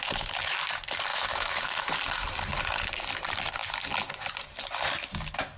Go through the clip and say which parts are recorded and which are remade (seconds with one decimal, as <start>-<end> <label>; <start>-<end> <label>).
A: 0.0-1.1 recorded; 1.1-1.9 remade; 1.9-5.6 recorded